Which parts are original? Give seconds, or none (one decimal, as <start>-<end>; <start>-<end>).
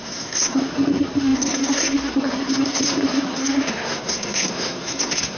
none